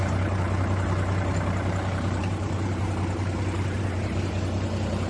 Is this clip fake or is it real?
fake